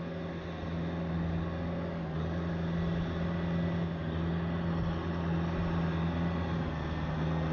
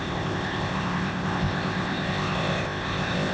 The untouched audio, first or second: first